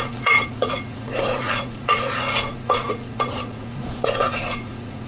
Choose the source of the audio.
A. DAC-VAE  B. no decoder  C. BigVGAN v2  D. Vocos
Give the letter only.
D